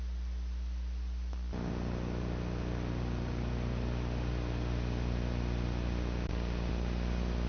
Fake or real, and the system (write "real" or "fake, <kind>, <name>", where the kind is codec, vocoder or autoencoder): real